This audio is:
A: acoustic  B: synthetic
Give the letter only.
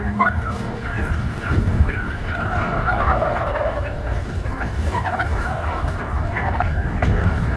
B